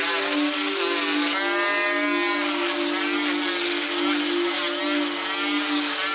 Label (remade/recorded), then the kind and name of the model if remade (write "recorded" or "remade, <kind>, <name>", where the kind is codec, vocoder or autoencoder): recorded